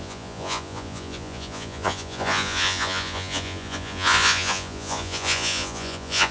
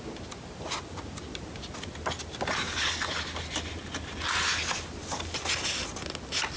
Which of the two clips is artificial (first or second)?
first